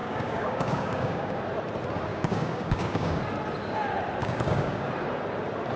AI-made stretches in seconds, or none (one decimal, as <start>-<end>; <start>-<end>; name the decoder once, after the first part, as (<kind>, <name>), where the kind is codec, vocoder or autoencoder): 0.0-1.4 (codec, DAC); 2.1-3.2; 4.2-4.9